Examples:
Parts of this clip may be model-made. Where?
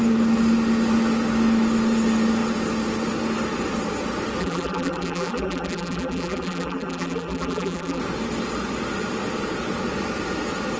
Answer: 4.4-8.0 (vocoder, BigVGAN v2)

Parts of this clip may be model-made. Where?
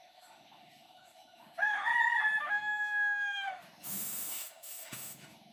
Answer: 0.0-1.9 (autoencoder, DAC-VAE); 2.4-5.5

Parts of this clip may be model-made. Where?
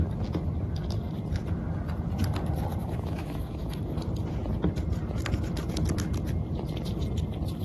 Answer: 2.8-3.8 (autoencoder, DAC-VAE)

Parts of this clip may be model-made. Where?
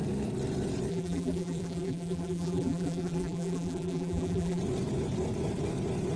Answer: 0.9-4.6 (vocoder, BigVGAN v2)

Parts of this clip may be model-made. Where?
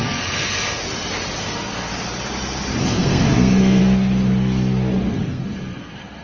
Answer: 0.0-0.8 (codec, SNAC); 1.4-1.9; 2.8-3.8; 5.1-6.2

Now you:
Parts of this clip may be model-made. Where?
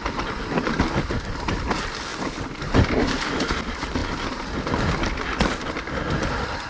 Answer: none